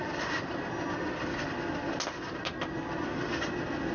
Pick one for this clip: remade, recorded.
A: recorded